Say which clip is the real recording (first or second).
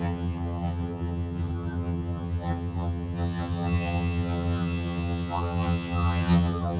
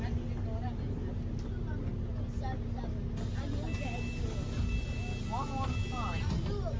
second